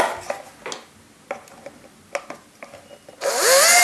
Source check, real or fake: real